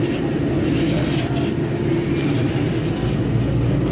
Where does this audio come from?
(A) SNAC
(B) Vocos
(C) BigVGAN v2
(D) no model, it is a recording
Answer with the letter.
D